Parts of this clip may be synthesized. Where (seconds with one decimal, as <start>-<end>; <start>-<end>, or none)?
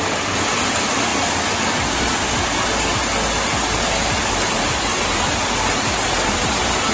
5.4-6.9